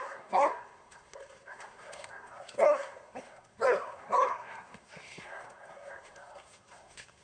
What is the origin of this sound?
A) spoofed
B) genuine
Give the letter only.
A